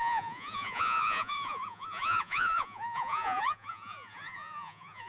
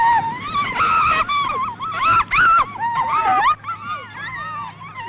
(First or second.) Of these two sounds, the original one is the second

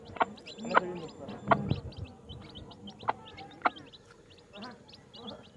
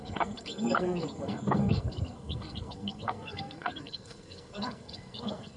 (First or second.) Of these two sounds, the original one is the first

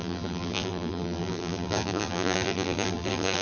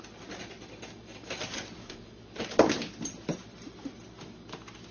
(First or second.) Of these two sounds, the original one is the second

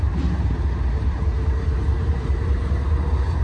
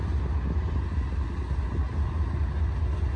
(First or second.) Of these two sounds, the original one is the second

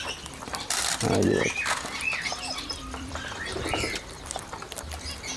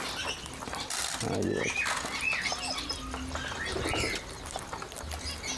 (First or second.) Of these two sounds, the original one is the second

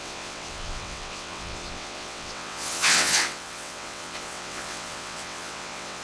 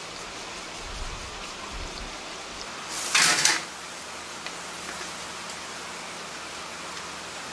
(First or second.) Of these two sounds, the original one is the second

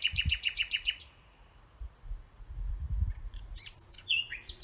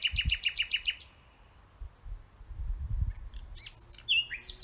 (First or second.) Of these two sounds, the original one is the second